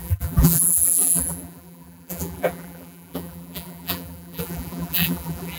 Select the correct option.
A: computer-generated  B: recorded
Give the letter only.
A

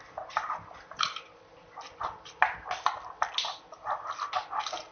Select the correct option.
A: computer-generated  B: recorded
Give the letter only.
B